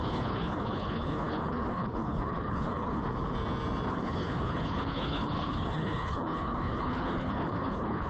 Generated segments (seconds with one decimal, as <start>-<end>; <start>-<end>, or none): 0.0-3.0; 3.9-8.1